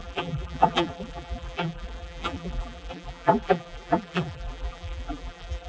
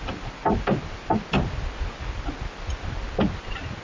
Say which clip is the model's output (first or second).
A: first